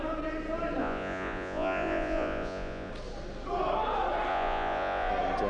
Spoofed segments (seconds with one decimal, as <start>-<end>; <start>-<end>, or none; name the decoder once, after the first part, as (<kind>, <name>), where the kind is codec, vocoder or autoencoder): 0.8-2.9 (vocoder, Vocos); 4.3-5.1